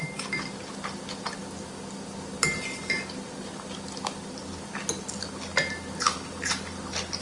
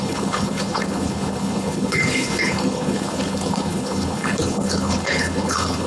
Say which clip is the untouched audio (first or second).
first